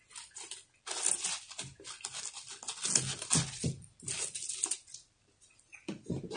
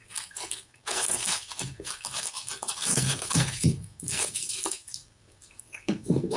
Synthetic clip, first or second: second